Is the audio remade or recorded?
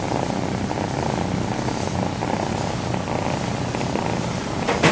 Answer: recorded